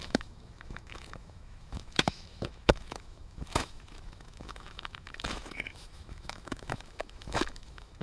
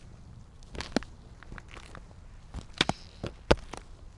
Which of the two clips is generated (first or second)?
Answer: first